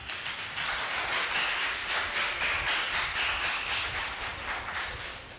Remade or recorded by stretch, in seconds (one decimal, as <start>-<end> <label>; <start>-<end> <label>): 0.0-5.4 recorded